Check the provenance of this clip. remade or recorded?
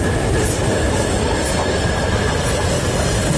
recorded